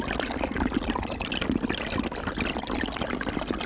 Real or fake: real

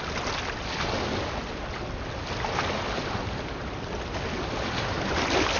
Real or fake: real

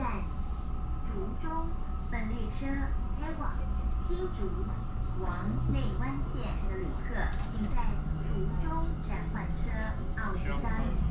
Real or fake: real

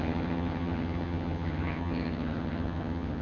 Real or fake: fake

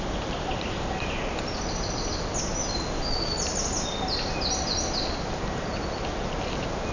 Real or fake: real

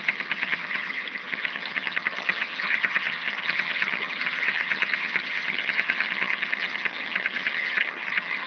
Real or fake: fake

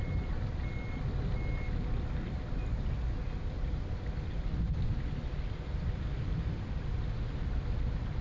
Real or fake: real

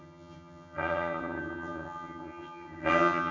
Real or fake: fake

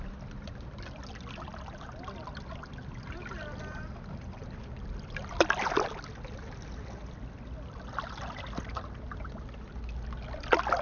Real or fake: real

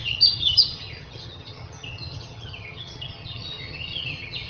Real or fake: fake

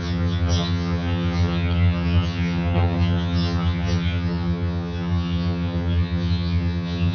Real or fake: fake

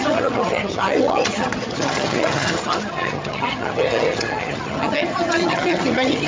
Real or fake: fake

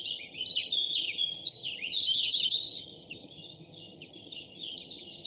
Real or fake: fake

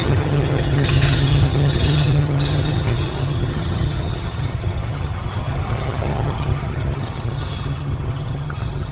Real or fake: fake